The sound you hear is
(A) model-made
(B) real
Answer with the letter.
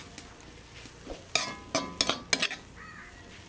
B